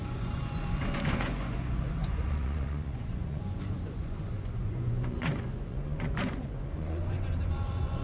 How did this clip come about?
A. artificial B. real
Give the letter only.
A